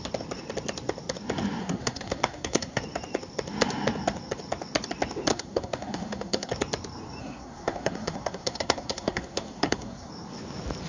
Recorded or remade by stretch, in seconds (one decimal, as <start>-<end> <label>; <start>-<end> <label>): 0.0-1.6 recorded; 1.6-2.8 remade; 2.8-5.3 recorded; 5.3-6.5 remade; 6.5-7.2 recorded; 7.2-10.1 remade; 10.1-10.9 recorded